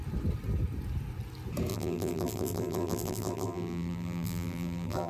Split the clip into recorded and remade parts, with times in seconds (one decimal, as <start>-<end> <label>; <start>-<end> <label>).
0.0-1.7 recorded; 1.7-5.1 remade